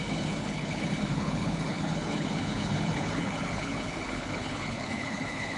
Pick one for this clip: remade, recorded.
remade